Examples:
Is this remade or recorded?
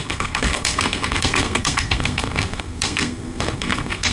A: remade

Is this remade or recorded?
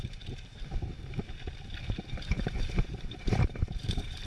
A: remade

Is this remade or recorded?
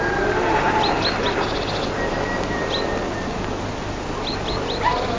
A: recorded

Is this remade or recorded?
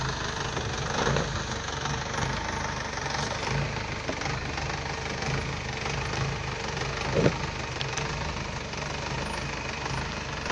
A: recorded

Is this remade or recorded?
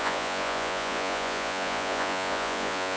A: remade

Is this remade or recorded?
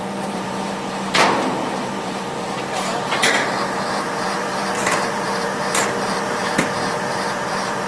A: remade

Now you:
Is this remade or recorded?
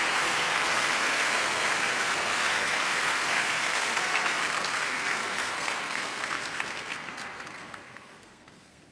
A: remade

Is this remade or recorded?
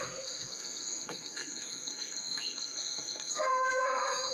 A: remade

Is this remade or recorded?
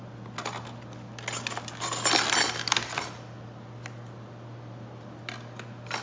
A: recorded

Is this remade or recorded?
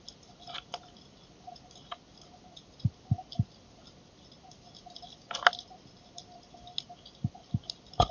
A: recorded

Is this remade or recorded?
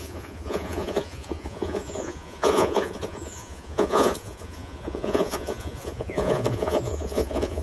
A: remade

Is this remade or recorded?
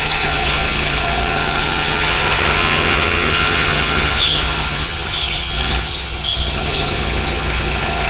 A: remade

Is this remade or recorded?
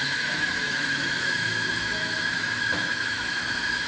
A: remade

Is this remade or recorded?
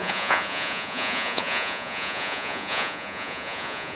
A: remade